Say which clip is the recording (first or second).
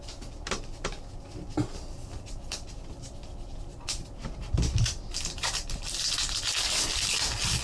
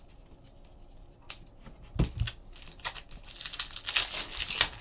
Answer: second